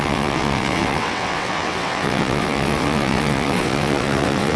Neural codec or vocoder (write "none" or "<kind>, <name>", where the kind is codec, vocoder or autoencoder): vocoder, WaveNeXt